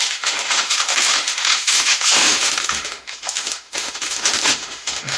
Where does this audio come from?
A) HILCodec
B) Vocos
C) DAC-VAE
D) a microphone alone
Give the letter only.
C